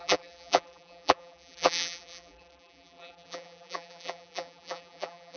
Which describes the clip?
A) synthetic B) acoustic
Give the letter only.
A